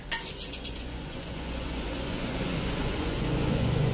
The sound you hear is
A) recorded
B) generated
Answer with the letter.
B